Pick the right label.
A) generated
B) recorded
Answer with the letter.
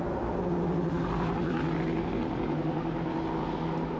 B